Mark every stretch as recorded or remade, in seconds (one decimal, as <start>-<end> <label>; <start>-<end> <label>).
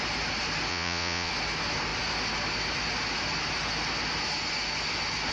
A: 0.0-0.7 recorded; 0.7-1.3 remade; 1.3-5.3 recorded